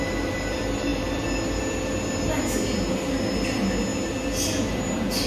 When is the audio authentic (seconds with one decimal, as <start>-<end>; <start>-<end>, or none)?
0.0-5.3